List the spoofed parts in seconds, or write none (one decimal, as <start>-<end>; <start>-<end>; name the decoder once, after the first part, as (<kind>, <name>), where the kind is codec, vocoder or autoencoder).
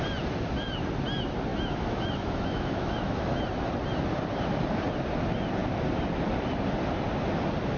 1.5-3.4 (autoencoder, DAC-VAE)